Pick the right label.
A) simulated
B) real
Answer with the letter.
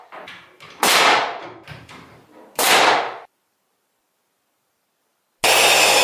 B